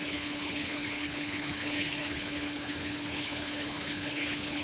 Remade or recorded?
remade